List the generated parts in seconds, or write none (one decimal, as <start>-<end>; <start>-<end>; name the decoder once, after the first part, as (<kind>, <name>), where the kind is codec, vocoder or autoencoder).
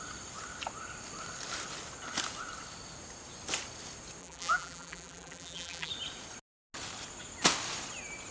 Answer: 4.2-5.9 (vocoder, BigVGAN v2)